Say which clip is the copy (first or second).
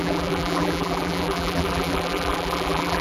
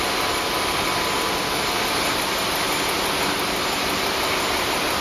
first